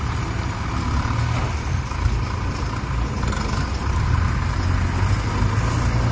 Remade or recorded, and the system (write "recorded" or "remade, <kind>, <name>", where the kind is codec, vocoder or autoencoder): recorded